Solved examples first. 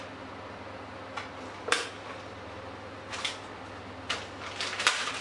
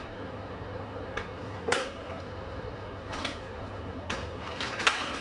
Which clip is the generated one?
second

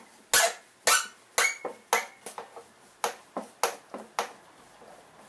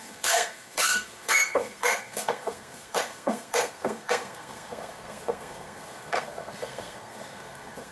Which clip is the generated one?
second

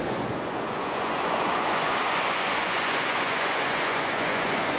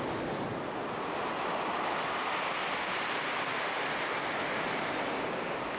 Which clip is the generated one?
first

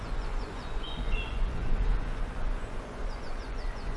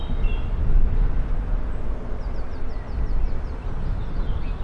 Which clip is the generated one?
first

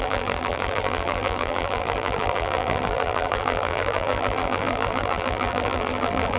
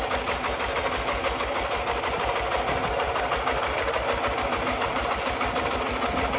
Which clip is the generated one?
first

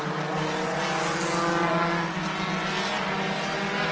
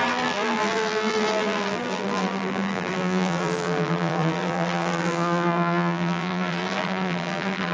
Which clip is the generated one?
second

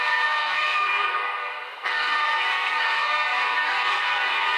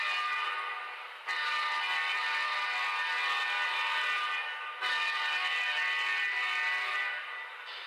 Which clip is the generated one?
first